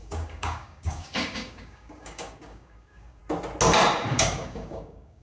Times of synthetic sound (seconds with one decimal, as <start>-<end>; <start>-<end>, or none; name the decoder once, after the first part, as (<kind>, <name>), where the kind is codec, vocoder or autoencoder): 0.0-3.2 (codec, DAC); 4.1-5.2